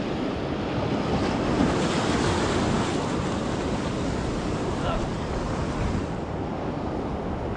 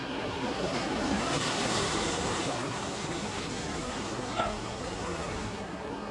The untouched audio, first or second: first